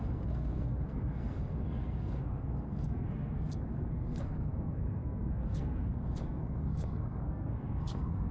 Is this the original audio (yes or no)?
no